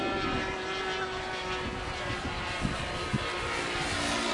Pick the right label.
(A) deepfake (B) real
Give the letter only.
B